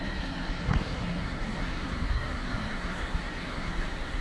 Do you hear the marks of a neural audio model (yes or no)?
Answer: yes